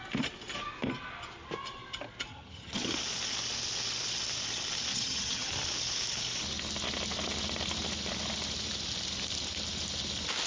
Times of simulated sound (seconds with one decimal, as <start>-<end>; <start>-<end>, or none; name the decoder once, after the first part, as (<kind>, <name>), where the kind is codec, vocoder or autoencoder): 2.3-2.9 (vocoder, HiFi-GAN); 4.9-5.5